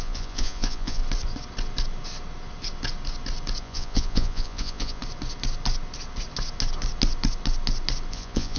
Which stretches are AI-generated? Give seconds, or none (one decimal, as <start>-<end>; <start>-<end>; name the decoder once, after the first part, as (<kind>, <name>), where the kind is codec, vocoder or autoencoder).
0.0-1.0 (vocoder, Vocos); 3.6-5.0; 8.1-8.6